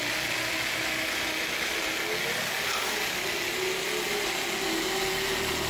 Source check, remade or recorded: recorded